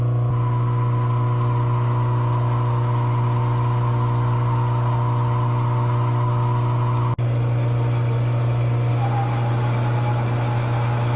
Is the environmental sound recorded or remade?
recorded